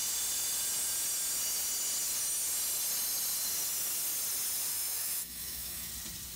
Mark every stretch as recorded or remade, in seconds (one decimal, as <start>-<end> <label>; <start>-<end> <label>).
0.0-4.7 recorded; 4.7-5.9 remade; 5.9-6.4 recorded